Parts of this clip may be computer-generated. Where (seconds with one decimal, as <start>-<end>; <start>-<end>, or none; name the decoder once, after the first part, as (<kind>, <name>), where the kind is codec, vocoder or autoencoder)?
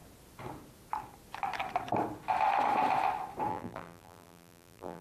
3.5-5.0 (vocoder, BigVGAN v2)